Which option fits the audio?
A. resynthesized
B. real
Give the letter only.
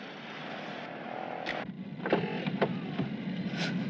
B